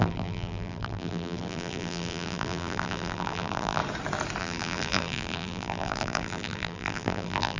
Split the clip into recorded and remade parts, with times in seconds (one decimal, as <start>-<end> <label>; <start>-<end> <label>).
0.0-3.8 remade; 3.8-4.4 recorded; 4.4-7.6 remade

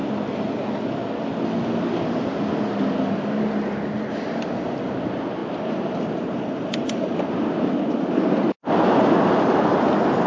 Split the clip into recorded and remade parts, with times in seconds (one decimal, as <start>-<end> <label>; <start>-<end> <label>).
0.0-10.3 recorded

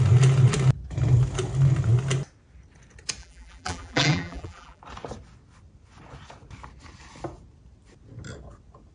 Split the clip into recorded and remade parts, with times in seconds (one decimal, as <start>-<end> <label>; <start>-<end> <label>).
0.0-3.2 recorded; 3.2-4.8 remade; 4.8-8.9 recorded

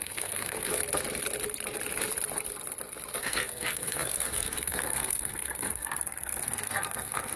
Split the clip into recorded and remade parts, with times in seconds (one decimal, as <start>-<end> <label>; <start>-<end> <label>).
0.0-0.8 remade; 0.8-3.2 recorded; 3.2-7.4 remade

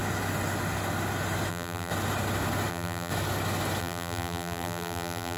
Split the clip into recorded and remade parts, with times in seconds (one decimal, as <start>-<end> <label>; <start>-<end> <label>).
0.0-1.5 recorded; 1.5-1.9 remade; 1.9-2.7 recorded; 2.7-3.1 remade; 3.1-3.8 recorded; 3.8-5.4 remade

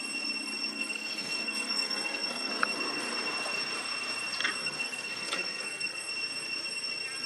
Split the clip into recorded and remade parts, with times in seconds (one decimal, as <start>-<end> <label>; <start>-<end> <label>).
0.0-0.7 recorded; 0.7-2.5 remade; 2.5-4.6 recorded; 4.6-6.1 remade; 6.1-7.3 recorded